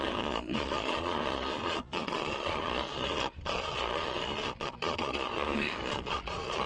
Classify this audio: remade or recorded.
remade